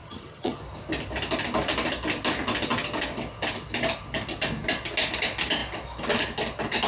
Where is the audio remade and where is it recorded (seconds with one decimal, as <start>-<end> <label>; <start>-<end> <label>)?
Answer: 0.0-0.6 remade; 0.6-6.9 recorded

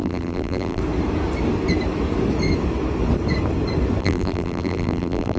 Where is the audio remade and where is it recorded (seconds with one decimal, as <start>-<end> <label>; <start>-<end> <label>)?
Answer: 0.0-0.8 remade; 0.8-4.0 recorded; 4.0-5.4 remade

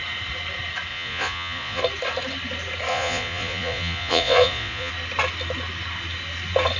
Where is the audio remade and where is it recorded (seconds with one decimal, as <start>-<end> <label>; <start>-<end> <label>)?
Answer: 0.0-0.9 recorded; 0.9-1.8 remade; 1.8-2.9 recorded; 2.9-4.9 remade; 4.9-6.8 recorded